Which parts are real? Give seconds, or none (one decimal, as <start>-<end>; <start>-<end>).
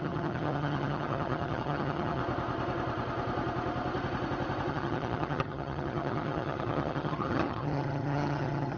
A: 2.2-4.7